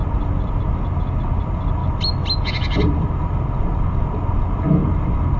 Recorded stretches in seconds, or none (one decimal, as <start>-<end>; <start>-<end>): 0.0-5.4